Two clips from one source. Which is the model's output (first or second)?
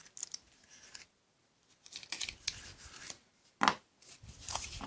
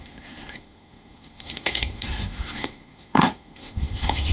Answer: second